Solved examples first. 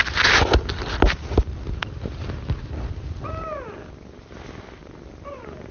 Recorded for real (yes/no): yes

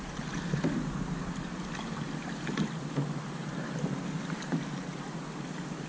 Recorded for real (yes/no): yes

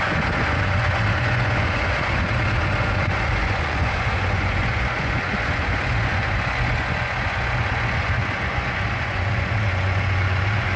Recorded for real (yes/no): no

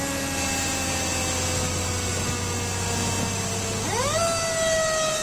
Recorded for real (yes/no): yes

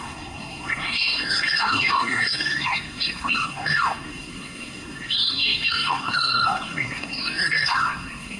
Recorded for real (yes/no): no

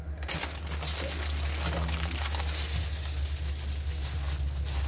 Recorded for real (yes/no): yes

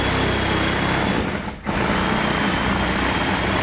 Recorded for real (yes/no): yes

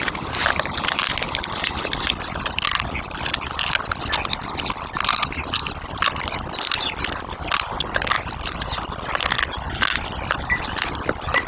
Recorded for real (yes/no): yes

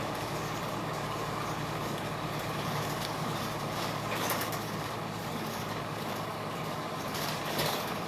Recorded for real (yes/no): no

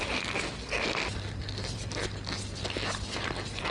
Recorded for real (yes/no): yes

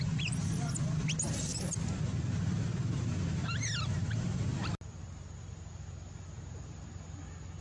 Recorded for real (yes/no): yes